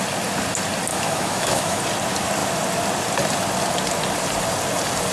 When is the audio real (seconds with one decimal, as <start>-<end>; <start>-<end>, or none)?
0.0-0.9; 1.8-5.1